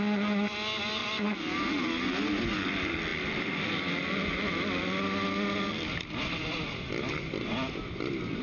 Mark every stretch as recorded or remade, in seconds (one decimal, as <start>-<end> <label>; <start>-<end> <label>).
0.0-1.0 recorded; 1.0-1.8 remade; 1.8-8.4 recorded

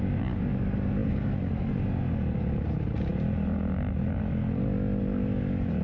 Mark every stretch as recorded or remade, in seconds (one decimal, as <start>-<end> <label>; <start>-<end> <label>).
0.0-5.8 recorded

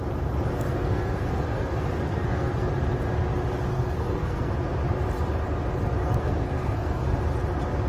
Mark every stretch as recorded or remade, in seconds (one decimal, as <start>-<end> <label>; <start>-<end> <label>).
0.0-0.5 recorded; 0.5-2.7 remade; 2.7-3.7 recorded; 3.7-4.5 remade; 4.5-6.0 recorded; 6.0-7.1 remade; 7.1-7.9 recorded

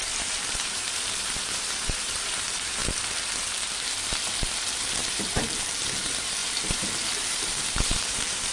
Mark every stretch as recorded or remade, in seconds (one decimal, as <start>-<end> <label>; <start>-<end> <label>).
0.0-2.8 remade; 2.8-4.7 recorded; 4.7-8.5 remade

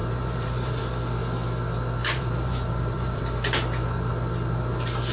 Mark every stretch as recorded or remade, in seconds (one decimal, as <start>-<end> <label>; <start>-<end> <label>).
0.0-0.8 remade; 0.8-2.0 recorded; 2.0-3.2 remade; 3.2-5.1 recorded

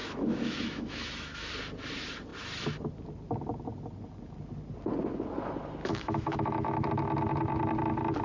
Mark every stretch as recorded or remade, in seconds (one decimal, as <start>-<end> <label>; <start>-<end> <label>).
0.0-1.5 remade; 1.5-5.8 recorded; 5.8-6.9 remade; 6.9-8.2 recorded